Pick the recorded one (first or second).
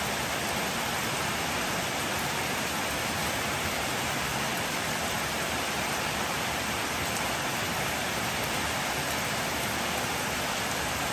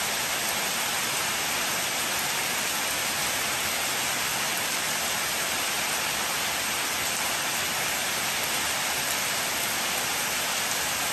second